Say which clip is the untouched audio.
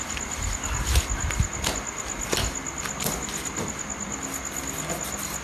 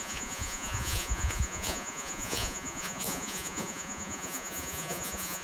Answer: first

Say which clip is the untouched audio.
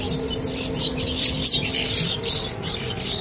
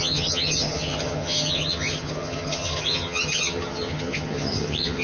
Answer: first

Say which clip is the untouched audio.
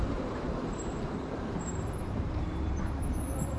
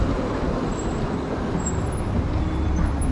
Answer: second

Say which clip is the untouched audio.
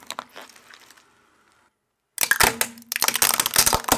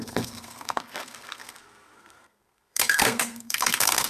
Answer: first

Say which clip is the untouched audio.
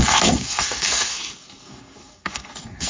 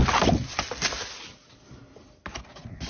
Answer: second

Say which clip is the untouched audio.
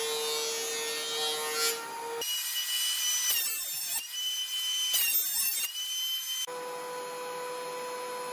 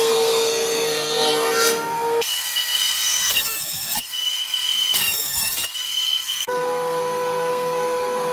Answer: first